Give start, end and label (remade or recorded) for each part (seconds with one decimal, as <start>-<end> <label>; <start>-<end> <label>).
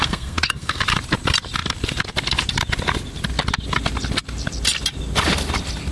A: 0.0-0.8 remade; 0.8-5.9 recorded